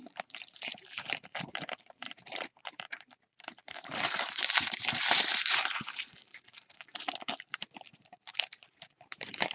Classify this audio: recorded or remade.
remade